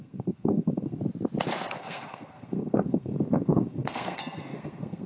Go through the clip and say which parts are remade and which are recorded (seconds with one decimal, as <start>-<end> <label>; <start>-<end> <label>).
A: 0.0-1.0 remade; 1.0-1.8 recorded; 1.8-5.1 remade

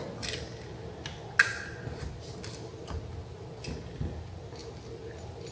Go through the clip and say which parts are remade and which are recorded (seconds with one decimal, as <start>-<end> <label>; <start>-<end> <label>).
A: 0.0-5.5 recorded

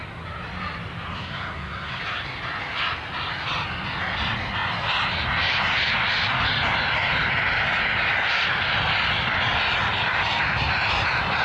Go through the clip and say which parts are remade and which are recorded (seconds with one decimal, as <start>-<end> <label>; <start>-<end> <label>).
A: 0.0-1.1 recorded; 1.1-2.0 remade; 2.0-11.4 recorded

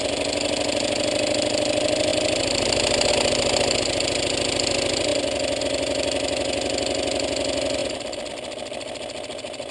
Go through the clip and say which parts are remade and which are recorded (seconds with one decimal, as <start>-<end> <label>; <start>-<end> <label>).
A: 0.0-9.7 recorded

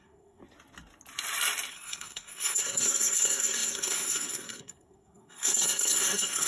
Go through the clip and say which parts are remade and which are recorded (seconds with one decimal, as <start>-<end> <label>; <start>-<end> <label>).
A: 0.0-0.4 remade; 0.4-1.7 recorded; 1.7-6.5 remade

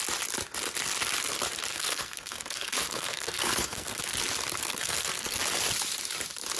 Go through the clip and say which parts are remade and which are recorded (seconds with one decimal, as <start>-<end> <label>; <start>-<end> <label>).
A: 0.0-1.7 recorded; 1.7-4.0 remade; 4.0-4.6 recorded; 4.6-5.4 remade; 5.4-6.6 recorded

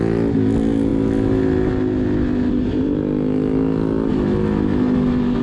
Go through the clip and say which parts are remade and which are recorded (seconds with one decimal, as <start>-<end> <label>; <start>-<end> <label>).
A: 0.0-5.4 recorded

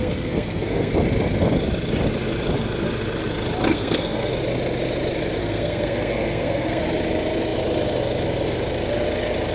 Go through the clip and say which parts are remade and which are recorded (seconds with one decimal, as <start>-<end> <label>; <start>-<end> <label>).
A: 0.0-0.9 remade; 0.9-3.7 recorded; 3.7-4.3 remade; 4.3-5.4 recorded; 5.4-6.8 remade; 6.8-9.5 recorded